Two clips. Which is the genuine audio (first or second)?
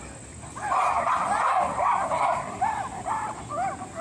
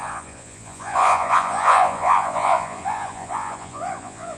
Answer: first